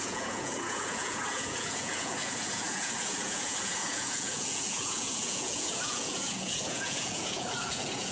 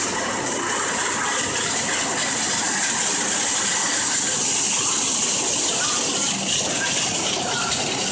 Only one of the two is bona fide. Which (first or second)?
second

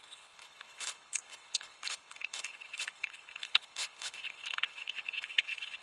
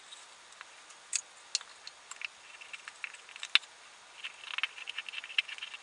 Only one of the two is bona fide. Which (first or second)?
second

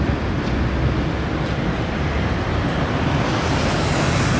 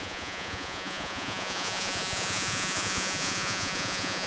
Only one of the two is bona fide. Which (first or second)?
first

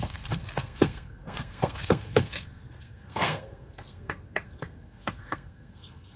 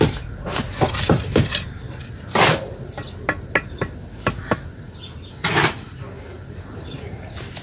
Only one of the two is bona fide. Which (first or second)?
second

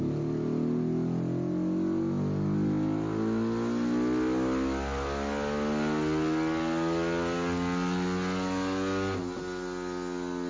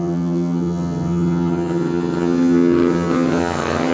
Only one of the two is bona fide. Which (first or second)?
first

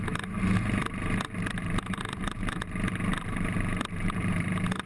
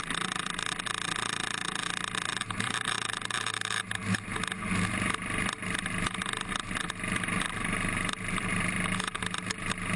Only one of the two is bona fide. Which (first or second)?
second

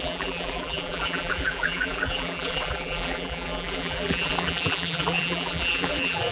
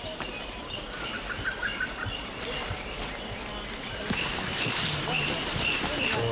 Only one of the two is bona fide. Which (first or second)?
second